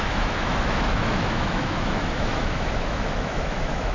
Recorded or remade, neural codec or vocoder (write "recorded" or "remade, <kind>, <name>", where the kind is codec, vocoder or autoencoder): remade, autoencoder, DAC-VAE